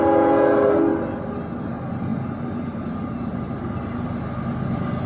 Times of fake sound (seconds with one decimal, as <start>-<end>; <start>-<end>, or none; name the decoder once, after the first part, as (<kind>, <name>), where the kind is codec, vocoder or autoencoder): none